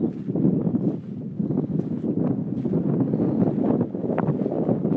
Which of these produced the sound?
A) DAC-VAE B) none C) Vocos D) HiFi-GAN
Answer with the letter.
B